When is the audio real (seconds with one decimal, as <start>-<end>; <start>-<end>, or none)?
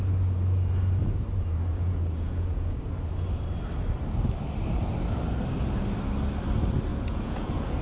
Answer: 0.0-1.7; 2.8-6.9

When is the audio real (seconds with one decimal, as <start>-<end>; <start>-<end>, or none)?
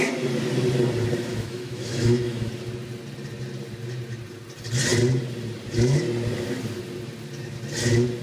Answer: 0.0-1.3; 2.5-8.2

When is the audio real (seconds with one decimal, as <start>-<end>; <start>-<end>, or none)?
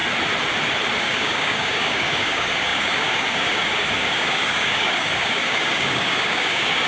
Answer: 0.0-1.0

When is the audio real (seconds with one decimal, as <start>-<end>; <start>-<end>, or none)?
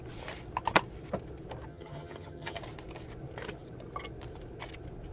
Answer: 0.0-1.7; 2.6-5.1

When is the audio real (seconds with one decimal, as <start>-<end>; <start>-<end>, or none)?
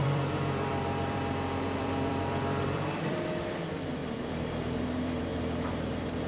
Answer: 4.0-4.6; 5.3-6.3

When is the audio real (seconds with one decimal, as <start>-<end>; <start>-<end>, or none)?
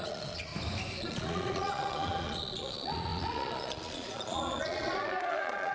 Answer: 0.5-1.0